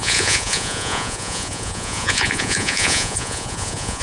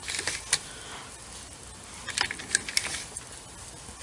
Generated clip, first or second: first